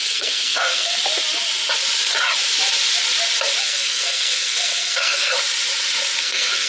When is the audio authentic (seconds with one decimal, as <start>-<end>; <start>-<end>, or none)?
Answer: 1.0-3.6; 5.3-6.2